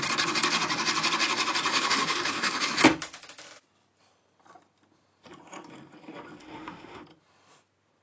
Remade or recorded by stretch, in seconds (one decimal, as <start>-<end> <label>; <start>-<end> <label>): 0.0-1.7 recorded; 1.7-2.7 remade; 2.7-6.4 recorded; 6.4-7.0 remade; 7.0-8.0 recorded